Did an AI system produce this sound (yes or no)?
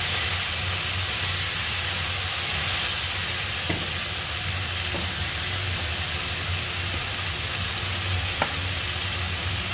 no